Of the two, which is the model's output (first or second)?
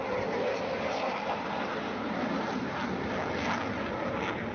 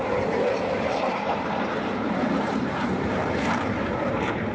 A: second